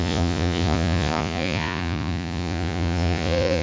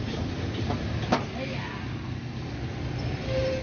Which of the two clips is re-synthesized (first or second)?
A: first